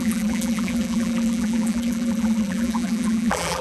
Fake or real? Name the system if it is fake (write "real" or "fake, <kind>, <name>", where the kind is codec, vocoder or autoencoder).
fake, vocoder, BigVGAN v2